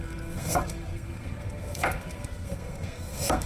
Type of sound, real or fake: fake